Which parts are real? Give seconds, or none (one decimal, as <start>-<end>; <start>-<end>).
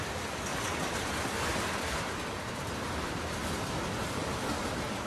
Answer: 0.0-5.1